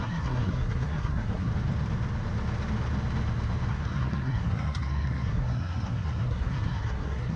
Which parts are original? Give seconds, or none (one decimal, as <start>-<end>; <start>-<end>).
1.5-3.7